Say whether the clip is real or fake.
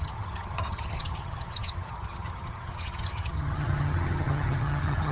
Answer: fake